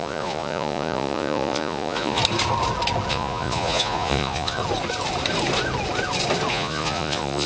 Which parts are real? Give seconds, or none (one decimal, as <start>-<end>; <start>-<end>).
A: 2.2-3.1; 4.6-6.5